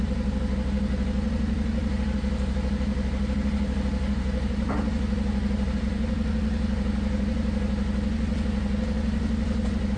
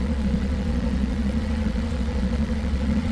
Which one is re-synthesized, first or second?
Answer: second